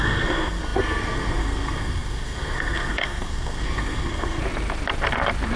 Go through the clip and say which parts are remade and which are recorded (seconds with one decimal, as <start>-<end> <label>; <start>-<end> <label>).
0.0-4.4 remade; 4.4-5.6 recorded